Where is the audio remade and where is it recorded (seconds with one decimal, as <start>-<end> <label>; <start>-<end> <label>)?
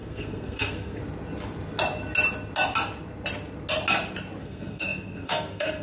0.0-1.0 remade; 1.0-4.4 recorded; 4.4-5.8 remade